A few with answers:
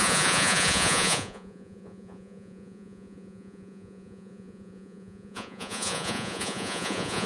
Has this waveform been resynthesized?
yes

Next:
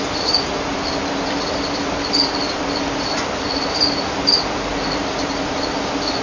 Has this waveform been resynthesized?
no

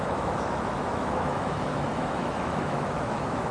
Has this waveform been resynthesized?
yes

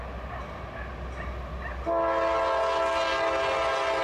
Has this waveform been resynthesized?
no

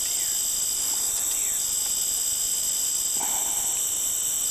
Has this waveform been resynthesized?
no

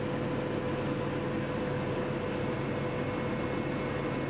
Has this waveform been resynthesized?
no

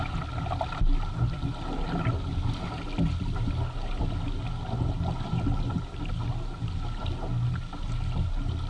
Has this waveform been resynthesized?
no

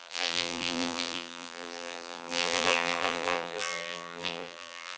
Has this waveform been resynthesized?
yes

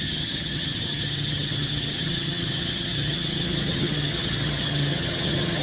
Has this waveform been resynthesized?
yes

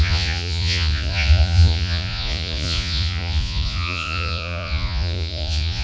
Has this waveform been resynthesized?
yes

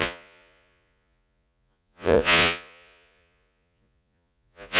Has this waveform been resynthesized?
yes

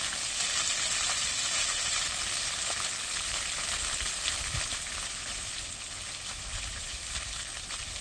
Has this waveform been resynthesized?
no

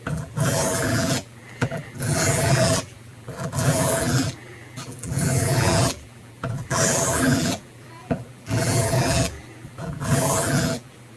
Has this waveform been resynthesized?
yes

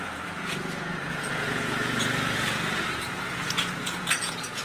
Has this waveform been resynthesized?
yes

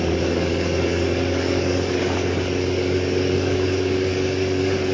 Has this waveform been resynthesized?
yes